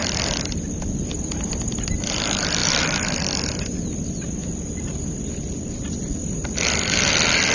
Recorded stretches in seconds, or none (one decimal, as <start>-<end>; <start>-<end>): 0.0-7.5